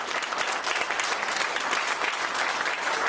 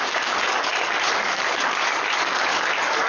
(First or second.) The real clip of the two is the first